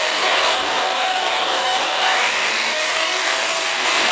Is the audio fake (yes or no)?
yes